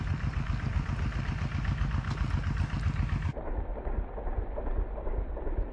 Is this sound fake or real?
real